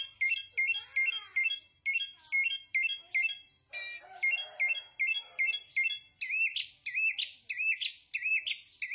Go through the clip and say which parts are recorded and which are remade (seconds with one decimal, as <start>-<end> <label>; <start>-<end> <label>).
0.0-8.9 recorded